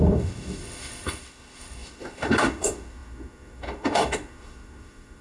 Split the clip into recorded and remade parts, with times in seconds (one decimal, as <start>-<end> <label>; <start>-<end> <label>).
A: 0.0-5.2 remade

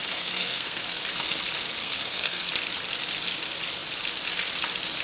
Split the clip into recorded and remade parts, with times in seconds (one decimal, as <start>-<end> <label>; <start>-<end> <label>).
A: 0.0-1.0 remade; 1.0-1.8 recorded; 1.8-2.5 remade; 2.5-5.0 recorded

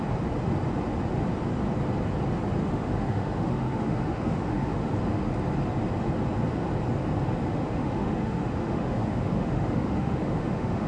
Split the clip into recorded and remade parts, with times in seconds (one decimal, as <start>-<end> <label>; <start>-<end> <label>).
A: 0.0-2.6 recorded; 2.6-4.9 remade; 4.9-7.5 recorded; 7.5-10.9 remade

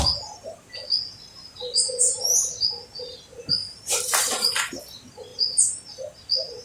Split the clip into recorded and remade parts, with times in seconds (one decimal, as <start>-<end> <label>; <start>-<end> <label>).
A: 0.0-3.6 recorded; 3.6-4.8 remade; 4.8-6.6 recorded

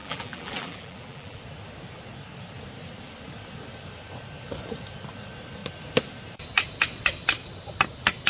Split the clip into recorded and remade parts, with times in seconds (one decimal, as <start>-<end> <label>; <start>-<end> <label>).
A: 0.0-1.4 remade; 1.4-8.3 recorded

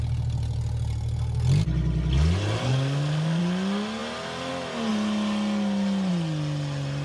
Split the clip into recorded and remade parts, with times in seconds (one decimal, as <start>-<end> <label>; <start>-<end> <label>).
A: 0.0-2.6 recorded; 2.6-3.4 remade; 3.4-7.0 recorded

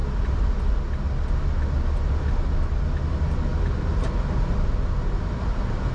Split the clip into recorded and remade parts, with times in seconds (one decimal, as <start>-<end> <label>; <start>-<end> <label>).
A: 0.0-5.9 recorded